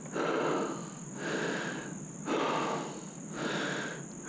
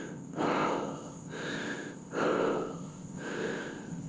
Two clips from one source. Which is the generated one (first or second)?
second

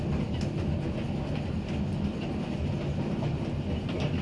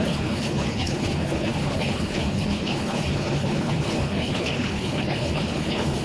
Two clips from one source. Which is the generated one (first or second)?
second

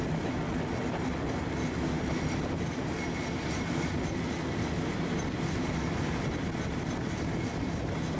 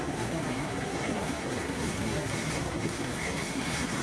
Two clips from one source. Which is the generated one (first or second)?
second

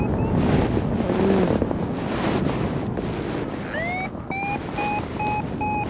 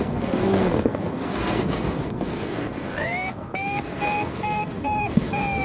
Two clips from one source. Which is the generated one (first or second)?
second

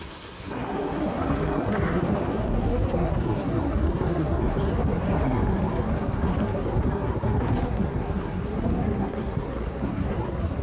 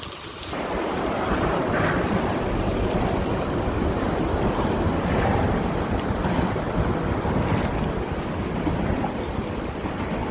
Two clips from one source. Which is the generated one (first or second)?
first